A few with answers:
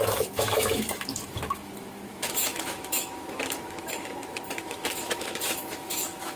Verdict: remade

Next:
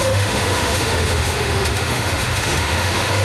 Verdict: remade